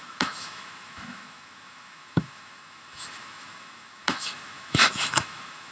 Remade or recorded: remade